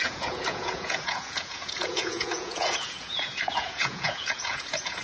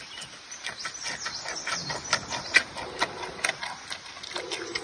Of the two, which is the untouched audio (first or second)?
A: second